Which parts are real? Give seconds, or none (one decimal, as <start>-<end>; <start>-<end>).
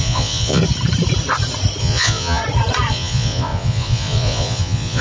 0.6-1.8; 2.4-2.9